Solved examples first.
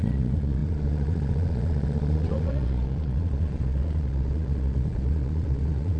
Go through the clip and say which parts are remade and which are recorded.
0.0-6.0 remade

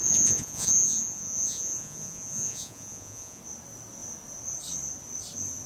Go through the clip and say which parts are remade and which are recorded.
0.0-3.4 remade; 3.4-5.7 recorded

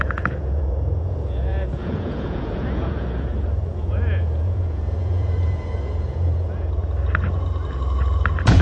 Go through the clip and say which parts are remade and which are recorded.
0.0-6.8 remade; 6.8-8.6 recorded